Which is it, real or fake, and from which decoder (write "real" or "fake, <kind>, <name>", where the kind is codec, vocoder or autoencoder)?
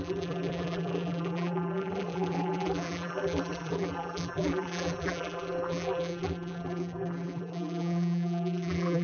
fake, vocoder, BigVGAN v2